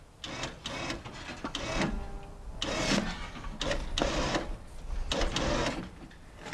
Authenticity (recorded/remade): recorded